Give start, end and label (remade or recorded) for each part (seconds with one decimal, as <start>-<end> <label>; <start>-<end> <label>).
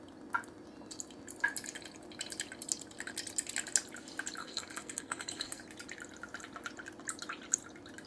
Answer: 0.0-4.4 recorded; 4.4-5.6 remade; 5.6-8.1 recorded